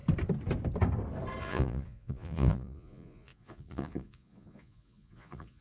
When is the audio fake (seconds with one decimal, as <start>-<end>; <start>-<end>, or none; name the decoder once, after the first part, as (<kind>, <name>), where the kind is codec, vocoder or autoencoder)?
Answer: 1.4-5.6 (vocoder, Vocos)